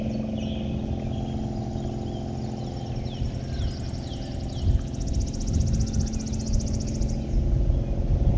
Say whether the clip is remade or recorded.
recorded